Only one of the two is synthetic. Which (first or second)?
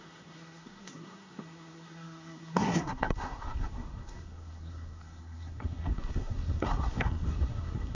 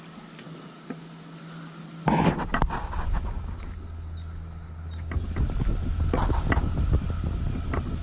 first